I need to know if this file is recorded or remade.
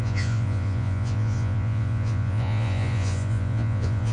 remade